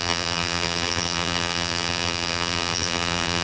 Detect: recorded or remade remade